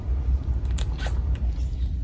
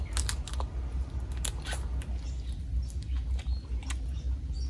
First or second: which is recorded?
second